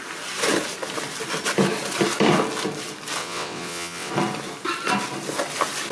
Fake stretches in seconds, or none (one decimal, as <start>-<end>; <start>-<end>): 3.2-4.1